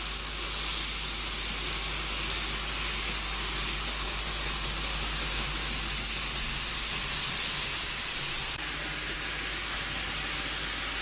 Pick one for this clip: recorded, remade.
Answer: recorded